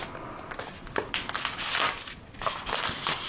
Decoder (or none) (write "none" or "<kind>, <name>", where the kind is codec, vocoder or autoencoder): none